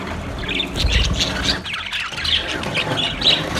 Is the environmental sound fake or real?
real